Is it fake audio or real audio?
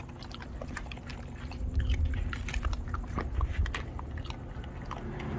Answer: real